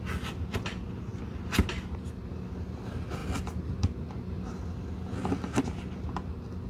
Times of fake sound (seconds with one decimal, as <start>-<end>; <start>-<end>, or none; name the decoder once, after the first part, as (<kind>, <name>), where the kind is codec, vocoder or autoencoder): none